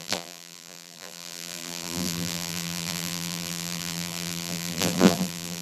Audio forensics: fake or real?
fake